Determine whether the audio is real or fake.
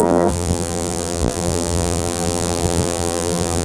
fake